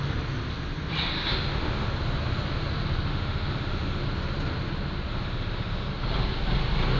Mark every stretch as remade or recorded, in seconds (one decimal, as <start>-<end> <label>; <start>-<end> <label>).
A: 0.0-1.1 recorded; 1.1-1.9 remade; 1.9-3.1 recorded; 3.1-4.0 remade; 4.0-5.1 recorded; 5.1-5.9 remade; 5.9-7.0 recorded